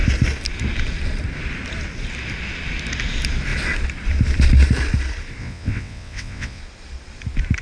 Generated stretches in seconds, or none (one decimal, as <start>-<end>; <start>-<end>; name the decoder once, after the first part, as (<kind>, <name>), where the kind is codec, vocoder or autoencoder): 5.4-6.6 (vocoder, WaveNeXt)